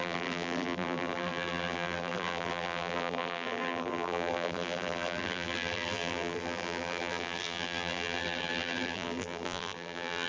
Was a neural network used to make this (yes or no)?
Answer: yes